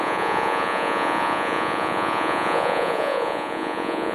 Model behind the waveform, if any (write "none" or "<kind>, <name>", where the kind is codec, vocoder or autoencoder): vocoder, Vocos